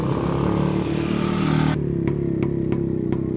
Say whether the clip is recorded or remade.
recorded